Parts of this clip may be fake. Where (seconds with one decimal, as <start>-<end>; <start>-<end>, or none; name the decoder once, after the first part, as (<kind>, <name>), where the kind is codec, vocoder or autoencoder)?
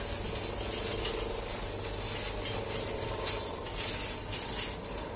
none